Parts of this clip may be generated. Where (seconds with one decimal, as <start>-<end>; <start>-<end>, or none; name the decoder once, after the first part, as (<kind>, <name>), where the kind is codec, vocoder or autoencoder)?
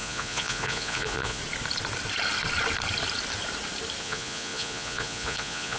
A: 0.0-1.4 (vocoder, Vocos); 4.0-5.8